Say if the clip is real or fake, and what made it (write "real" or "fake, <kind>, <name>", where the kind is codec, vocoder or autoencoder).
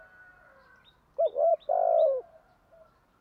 fake, vocoder, BigVGAN v2